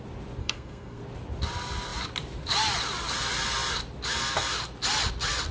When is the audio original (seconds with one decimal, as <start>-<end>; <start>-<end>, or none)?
0.0-0.4; 1.0-5.5